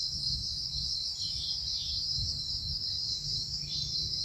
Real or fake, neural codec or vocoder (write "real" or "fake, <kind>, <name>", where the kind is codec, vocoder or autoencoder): fake, vocoder, BigVGAN v2